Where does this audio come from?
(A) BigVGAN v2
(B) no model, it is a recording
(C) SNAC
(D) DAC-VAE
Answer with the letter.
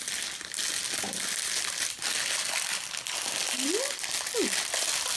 B